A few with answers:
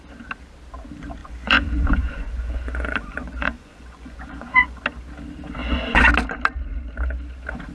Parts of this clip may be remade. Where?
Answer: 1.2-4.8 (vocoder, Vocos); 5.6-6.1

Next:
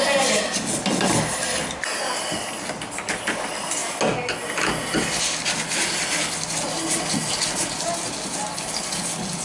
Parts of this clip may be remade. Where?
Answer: none

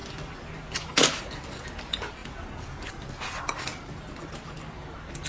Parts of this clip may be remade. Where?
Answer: none

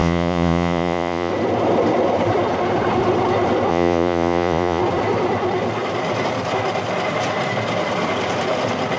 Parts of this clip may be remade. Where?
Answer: 0.0-1.3 (vocoder, Vocos); 3.7-4.8